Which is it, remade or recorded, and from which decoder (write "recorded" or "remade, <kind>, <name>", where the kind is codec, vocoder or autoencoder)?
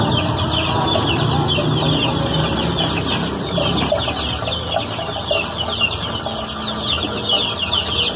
recorded